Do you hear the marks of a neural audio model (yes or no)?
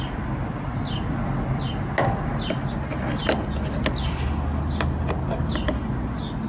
no